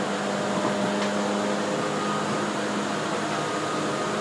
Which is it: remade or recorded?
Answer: recorded